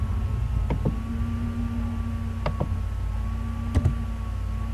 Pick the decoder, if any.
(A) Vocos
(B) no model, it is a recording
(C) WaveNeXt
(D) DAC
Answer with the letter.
B